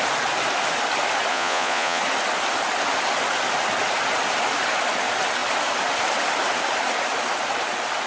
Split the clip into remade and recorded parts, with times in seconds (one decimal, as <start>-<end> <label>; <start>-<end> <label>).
0.0-1.3 recorded; 1.3-2.0 remade; 2.0-8.1 recorded